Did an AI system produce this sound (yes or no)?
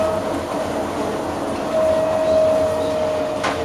no